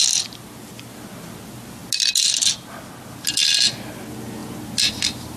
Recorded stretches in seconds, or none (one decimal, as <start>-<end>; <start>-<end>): 0.0-5.4